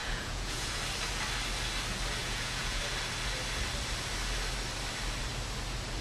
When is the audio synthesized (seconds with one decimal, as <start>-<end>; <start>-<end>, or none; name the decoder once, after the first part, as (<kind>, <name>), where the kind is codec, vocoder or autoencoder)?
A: 0.0-0.8 (vocoder, Vocos); 2.2-2.8